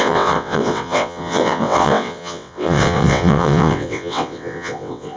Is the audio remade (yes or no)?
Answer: yes